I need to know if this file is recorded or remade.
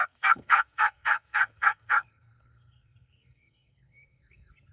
remade